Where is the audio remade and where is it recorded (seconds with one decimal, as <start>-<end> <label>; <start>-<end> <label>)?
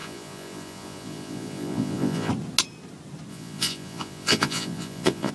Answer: 0.0-2.3 remade; 2.3-3.3 recorded; 3.3-5.3 remade